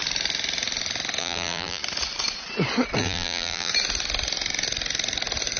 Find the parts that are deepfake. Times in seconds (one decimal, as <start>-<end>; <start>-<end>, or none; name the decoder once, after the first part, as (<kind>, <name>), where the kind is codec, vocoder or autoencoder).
1.2-1.8 (vocoder, BigVGAN v2); 3.0-3.7